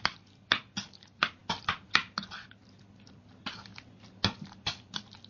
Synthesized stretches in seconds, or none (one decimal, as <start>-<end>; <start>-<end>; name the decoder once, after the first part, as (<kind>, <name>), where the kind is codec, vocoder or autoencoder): 3.7-4.6 (vocoder, BigVGAN v2)

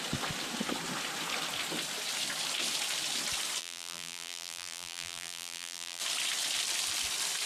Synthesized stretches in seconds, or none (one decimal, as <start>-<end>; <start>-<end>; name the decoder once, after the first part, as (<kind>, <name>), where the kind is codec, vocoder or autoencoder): 3.6-6.0 (vocoder, BigVGAN v2)

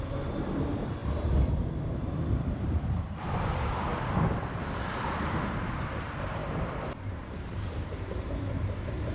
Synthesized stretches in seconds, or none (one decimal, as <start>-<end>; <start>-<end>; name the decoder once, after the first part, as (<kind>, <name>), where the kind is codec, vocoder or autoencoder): 0.0-3.9 (vocoder, BigVGAN v2); 5.2-9.1

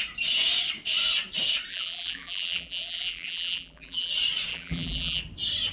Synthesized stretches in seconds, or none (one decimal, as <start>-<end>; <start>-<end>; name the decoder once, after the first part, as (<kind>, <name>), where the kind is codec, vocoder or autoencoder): 1.7-4.1 (vocoder, BigVGAN v2); 4.5-5.2

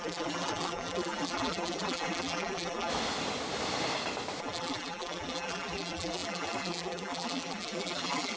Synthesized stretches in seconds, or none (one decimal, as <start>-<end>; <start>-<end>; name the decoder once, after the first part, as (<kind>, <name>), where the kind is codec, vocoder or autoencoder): 0.0-2.9 (vocoder, BigVGAN v2); 4.4-8.4

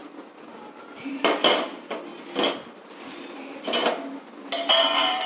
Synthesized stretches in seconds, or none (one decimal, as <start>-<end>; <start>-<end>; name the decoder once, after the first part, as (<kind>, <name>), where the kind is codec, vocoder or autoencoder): 0.0-2.1 (vocoder, BigVGAN v2); 2.7-3.8; 4.7-5.3

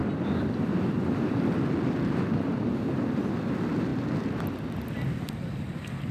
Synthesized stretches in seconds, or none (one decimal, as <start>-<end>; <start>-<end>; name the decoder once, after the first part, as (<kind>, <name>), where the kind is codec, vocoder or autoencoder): 0.0-3.2 (vocoder, BigVGAN v2); 3.9-4.4

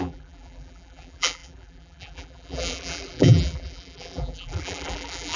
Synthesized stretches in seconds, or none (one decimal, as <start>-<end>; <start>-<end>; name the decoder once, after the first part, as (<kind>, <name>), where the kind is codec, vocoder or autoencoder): 0.0-5.4 (vocoder, BigVGAN v2)